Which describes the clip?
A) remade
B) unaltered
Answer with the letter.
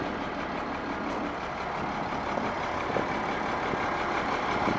B